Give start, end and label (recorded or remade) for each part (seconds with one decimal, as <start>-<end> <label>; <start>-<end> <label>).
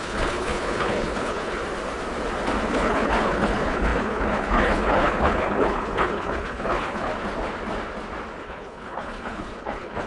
0.0-1.6 remade; 1.6-2.7 recorded; 2.7-7.1 remade; 7.1-8.4 recorded; 8.4-10.1 remade